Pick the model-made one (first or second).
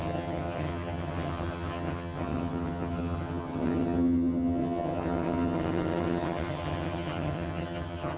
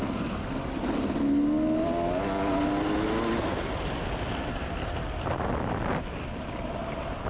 first